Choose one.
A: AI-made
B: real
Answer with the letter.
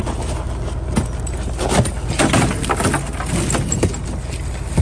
B